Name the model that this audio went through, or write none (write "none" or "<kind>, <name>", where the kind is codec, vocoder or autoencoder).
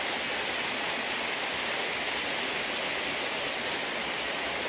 none